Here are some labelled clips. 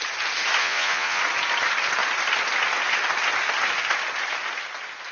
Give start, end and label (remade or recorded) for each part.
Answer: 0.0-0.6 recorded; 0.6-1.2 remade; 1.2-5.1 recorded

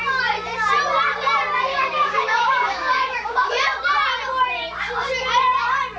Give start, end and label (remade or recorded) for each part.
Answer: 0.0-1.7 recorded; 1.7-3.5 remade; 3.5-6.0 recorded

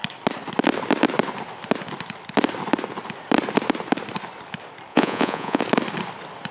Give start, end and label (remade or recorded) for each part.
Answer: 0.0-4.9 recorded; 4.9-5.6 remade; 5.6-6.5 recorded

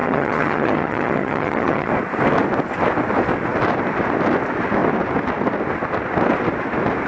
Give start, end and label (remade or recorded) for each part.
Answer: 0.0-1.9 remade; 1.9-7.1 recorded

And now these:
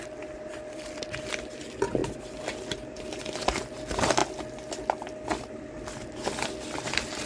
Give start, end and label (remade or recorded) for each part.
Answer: 0.0-7.3 recorded

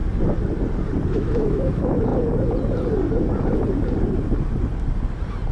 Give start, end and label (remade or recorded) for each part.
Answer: 0.0-1.1 recorded; 1.1-2.1 remade; 2.1-5.5 recorded

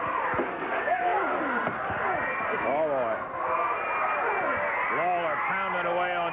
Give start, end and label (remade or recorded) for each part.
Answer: 0.0-6.3 recorded

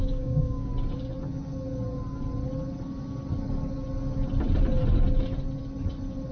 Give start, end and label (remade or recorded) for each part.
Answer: 0.0-0.7 remade; 0.7-6.3 recorded